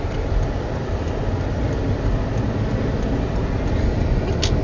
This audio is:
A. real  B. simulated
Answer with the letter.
A